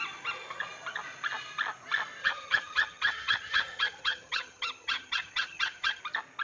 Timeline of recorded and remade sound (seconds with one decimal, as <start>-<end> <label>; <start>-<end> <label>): 0.0-2.2 recorded; 2.2-6.0 remade; 6.0-6.4 recorded